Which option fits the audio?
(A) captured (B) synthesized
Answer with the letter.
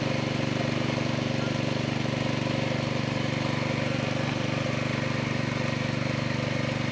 A